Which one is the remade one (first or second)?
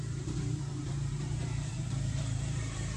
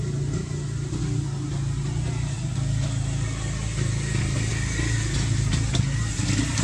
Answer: first